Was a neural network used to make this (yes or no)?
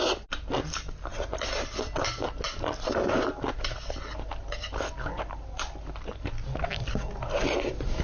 no